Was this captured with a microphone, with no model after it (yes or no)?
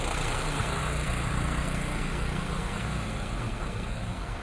no